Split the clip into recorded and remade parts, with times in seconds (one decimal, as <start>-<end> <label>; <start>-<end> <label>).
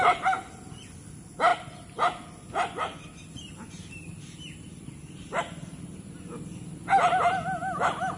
0.0-8.2 recorded